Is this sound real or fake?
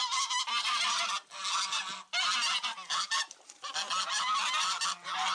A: real